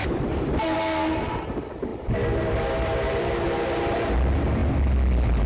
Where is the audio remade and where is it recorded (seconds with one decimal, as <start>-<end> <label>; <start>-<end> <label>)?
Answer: 0.0-5.5 recorded